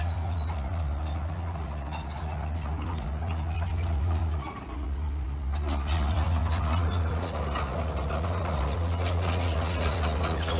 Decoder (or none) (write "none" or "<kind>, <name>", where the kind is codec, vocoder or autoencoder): vocoder, Vocos